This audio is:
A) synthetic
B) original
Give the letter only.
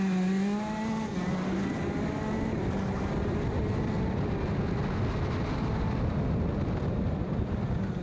B